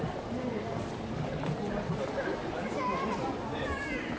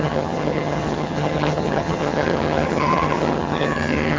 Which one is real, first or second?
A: first